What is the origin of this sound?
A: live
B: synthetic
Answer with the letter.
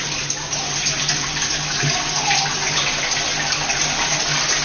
A